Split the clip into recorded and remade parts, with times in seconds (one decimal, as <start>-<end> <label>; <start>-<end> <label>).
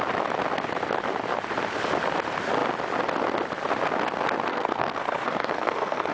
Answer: 0.0-4.5 recorded; 4.5-6.1 remade